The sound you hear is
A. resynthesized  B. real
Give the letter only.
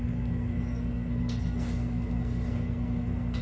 A